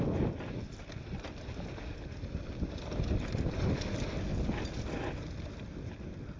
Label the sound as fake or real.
real